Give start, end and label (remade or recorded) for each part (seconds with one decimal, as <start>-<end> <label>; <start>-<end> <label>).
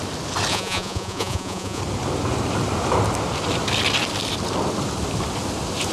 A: 0.0-0.5 recorded; 0.5-1.8 remade; 1.8-5.9 recorded